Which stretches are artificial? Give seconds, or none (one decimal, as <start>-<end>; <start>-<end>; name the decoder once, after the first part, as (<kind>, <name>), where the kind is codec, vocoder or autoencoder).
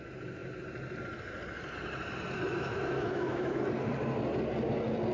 2.5-3.6 (autoencoder, DAC-VAE)